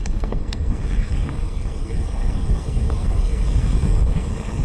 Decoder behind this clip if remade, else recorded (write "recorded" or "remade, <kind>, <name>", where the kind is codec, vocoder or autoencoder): remade, codec, SNAC